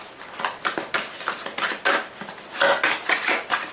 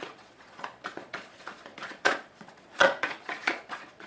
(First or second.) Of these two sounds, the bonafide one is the first